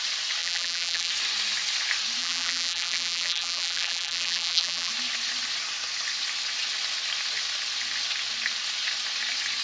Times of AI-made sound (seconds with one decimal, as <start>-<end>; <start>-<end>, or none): 0.4-1.1; 2.2-4.9